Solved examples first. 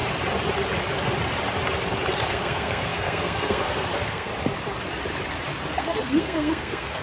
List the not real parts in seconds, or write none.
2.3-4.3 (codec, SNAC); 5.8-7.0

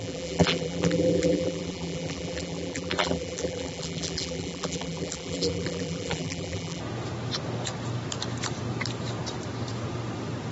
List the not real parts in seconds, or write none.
0.0-6.8 (vocoder, BigVGAN v2)